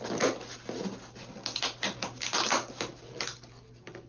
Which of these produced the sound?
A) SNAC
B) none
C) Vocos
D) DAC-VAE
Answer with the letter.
B